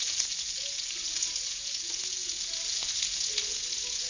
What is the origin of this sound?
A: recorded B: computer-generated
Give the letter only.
B